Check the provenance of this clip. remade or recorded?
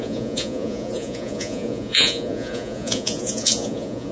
remade